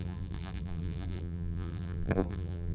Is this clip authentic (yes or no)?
no